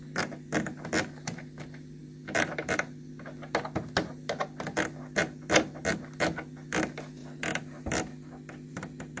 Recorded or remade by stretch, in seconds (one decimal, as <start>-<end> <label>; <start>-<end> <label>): 0.0-9.2 recorded